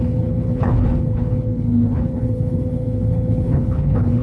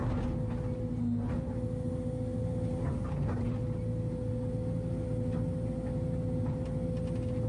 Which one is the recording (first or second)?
second